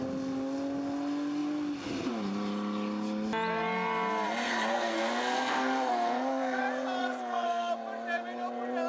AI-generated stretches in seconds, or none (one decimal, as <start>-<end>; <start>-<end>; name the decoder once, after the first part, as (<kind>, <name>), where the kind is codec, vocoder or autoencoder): 4.7-6.6 (codec, SNAC); 7.0-7.7